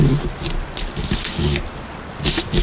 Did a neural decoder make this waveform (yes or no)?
no